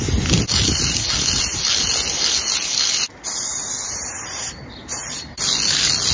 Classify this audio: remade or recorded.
recorded